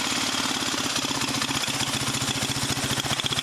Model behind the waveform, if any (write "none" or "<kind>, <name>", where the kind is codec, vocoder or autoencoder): none